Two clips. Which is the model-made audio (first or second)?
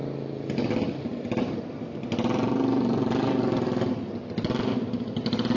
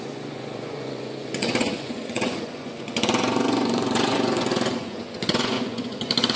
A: second